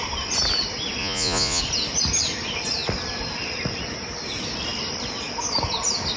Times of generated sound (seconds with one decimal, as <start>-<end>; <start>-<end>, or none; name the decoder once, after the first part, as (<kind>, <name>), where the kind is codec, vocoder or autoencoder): 1.0-1.6 (vocoder, Vocos)